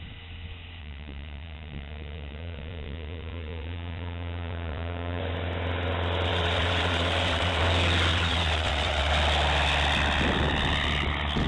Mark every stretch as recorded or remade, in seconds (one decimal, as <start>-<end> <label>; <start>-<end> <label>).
0.0-0.8 recorded; 0.8-5.2 remade; 5.2-6.3 recorded; 6.3-7.6 remade; 7.6-8.1 recorded; 8.1-9.1 remade; 9.1-11.5 recorded